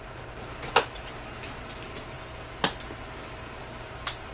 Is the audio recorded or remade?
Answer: recorded